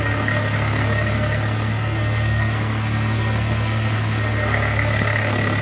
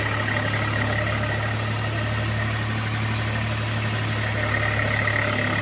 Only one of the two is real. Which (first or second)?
second